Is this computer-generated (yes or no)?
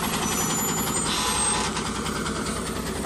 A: no